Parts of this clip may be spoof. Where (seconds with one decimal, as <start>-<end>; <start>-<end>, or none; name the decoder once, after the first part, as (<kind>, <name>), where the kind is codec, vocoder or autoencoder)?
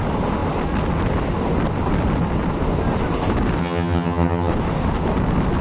3.6-4.5 (vocoder, HiFi-GAN)